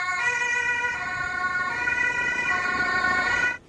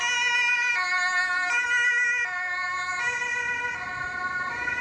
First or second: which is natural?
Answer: second